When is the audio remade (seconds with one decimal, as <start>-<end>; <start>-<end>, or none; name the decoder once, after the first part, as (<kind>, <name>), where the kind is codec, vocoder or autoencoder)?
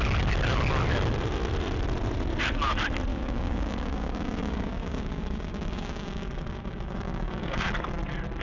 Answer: 3.1-7.7 (codec, DAC)